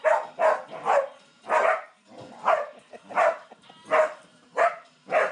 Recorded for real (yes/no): yes